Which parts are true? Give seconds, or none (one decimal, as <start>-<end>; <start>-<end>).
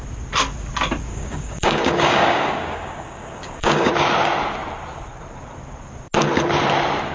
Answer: 0.0-1.1; 3.9-7.1